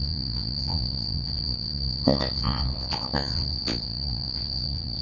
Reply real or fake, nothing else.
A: fake